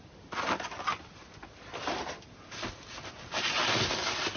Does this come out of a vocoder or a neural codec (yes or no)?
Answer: no